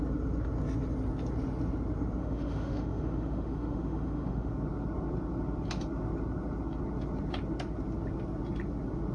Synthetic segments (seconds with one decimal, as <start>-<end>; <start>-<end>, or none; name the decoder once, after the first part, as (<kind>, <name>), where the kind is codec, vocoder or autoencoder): 2.2-4.5 (autoencoder, DAC-VAE)